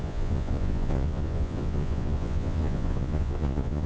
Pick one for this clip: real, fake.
fake